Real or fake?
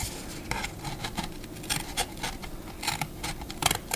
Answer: real